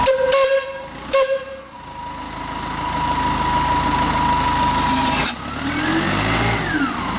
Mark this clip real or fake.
real